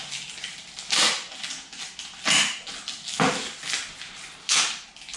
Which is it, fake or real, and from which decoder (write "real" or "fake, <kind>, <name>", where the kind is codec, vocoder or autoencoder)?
real